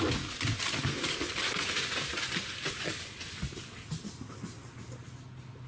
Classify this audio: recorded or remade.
recorded